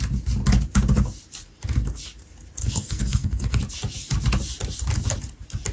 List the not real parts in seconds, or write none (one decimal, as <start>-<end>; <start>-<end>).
2.6-3.6